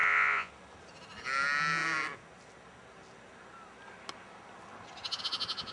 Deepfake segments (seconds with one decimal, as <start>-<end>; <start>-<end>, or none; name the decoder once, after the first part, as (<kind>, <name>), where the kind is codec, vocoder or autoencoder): 0.0-0.5 (vocoder, Vocos)

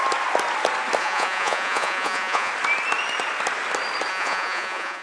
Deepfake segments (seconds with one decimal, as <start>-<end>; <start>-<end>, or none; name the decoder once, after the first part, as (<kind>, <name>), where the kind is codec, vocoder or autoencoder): 1.0-2.5 (vocoder, Vocos); 4.1-5.0